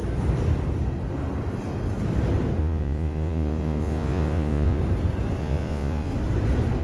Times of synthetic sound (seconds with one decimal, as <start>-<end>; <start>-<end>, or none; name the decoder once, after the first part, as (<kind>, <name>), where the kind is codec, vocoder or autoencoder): 2.6-4.8 (vocoder, Vocos); 5.4-6.1